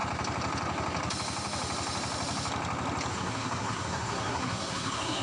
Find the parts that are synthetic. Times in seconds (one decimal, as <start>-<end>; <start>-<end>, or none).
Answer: 3.1-5.2